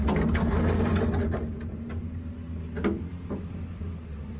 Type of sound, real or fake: real